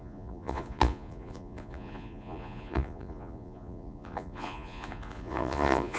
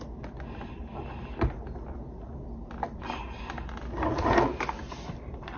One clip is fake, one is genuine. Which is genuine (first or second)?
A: second